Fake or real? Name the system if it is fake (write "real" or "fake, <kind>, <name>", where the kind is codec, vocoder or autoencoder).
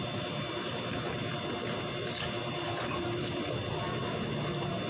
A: fake, vocoder, BigVGAN v2